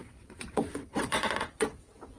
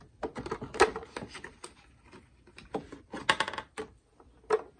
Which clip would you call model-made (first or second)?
first